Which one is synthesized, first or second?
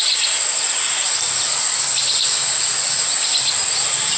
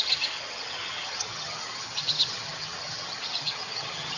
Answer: second